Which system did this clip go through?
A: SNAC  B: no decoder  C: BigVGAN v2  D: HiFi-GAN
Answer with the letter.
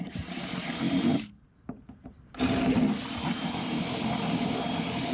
C